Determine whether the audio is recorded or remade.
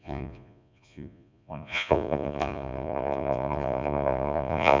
remade